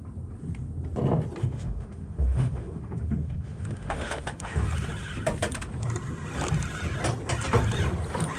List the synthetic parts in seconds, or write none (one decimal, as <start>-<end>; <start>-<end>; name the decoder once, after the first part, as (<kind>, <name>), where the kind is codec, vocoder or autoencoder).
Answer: 1.4-4.6 (autoencoder, DAC-VAE)